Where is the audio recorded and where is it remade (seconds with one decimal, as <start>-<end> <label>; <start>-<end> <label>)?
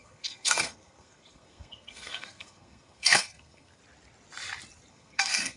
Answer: 0.0-3.8 remade; 3.8-4.9 recorded; 4.9-5.6 remade